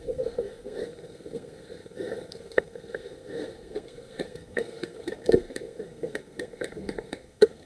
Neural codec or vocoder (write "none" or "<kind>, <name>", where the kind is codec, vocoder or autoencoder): codec, SNAC